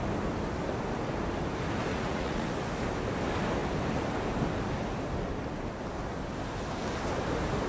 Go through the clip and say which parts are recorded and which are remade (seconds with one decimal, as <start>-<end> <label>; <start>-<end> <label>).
0.0-1.9 recorded; 1.9-2.5 remade; 2.5-7.7 recorded